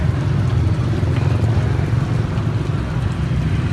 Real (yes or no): yes